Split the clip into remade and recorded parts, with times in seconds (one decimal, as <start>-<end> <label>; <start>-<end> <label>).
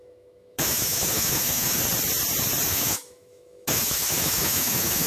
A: 0.0-1.8 remade; 1.8-2.7 recorded; 2.7-5.1 remade